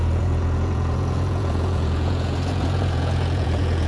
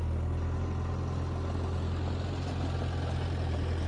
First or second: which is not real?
first